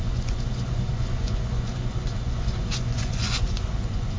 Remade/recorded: remade